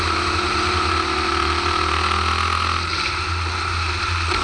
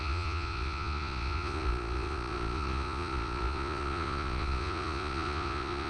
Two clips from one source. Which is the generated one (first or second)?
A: second